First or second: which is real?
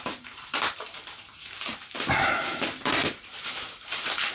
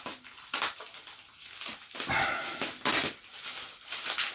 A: second